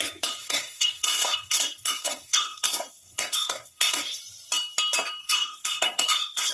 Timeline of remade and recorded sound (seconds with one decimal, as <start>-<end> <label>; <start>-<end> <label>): 0.0-0.4 recorded; 0.4-4.2 remade; 4.2-5.2 recorded; 5.2-6.5 remade